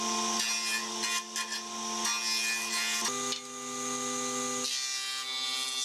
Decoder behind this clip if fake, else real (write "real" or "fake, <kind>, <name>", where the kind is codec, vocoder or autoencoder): real